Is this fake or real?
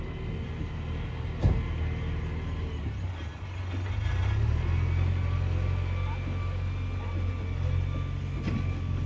real